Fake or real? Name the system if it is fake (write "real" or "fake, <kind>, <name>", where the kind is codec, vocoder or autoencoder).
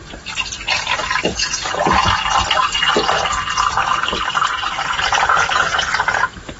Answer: real